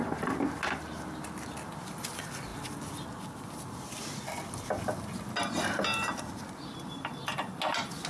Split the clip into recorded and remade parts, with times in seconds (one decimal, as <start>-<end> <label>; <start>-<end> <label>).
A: 0.0-8.1 recorded